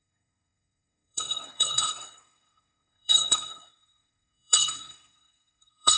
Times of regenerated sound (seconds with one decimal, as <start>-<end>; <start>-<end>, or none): 0.0-6.0